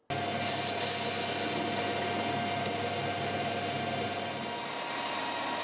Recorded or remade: recorded